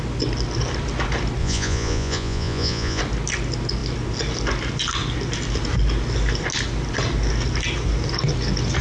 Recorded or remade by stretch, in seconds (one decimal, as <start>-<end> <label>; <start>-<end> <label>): 0.0-1.4 recorded; 1.4-3.0 remade; 3.0-8.8 recorded